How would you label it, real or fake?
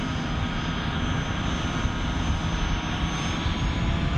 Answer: real